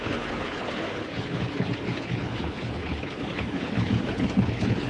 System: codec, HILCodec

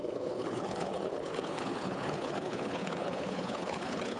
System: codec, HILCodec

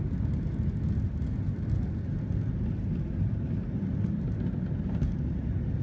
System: none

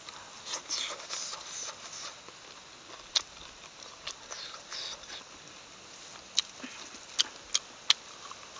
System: none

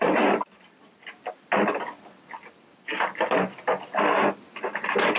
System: none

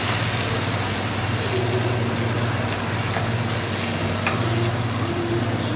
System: none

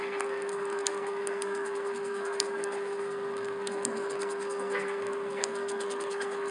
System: codec, SNAC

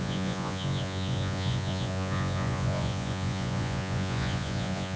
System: vocoder, Vocos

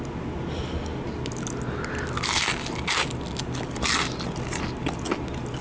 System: none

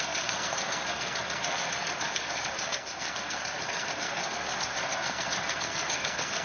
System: codec, SNAC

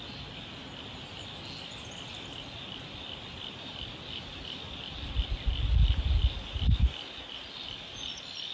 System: none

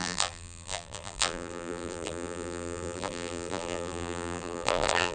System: vocoder, BigVGAN v2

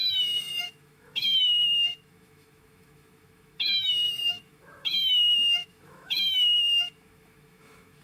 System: autoencoder, DAC-VAE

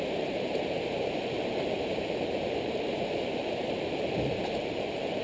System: vocoder, BigVGAN v2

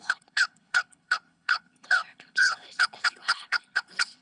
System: codec, HILCodec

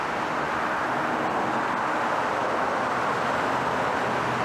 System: none